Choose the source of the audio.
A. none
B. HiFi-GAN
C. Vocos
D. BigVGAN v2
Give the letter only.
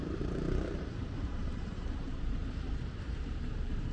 D